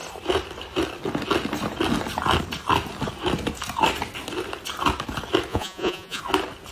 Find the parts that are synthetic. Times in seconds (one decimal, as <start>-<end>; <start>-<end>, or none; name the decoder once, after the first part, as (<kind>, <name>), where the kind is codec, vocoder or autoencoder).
5.5-6.2 (vocoder, Vocos)